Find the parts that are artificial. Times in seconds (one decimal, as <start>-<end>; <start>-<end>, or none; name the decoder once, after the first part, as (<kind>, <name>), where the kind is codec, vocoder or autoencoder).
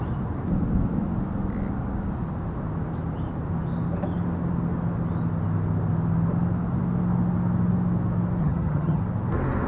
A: 8.4-9.0 (vocoder, HiFi-GAN)